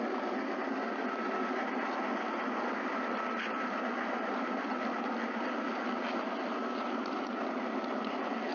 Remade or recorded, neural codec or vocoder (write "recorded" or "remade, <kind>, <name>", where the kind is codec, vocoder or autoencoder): recorded